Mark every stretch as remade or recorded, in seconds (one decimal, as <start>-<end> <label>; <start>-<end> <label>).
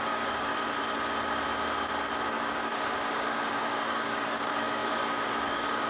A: 0.0-0.5 remade; 0.5-2.3 recorded; 2.3-5.9 remade